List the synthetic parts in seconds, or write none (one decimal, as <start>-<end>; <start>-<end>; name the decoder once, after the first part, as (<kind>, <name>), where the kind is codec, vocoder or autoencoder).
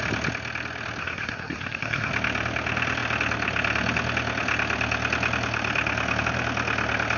1.0-2.1 (codec, SNAC)